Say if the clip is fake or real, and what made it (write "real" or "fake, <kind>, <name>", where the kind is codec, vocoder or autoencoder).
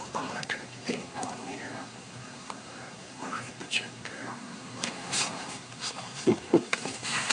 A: fake, codec, SNAC